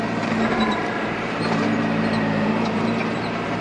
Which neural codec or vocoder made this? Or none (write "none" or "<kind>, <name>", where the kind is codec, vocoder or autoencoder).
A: vocoder, BigVGAN v2